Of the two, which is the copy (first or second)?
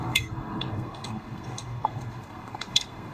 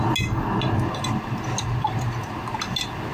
first